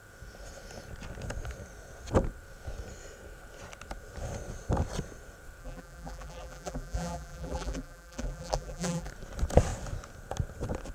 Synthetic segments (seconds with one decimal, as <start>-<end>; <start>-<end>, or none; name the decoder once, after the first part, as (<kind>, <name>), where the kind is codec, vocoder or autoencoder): 5.6-9.1 (vocoder, BigVGAN v2)